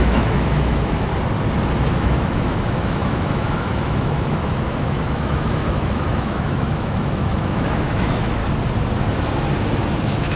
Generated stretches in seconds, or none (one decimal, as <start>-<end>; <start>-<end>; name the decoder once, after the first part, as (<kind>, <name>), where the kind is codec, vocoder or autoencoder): 0.0-1.1 (autoencoder, DAC-VAE); 1.9-8.4; 9.9-10.4